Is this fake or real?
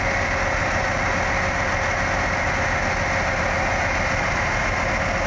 real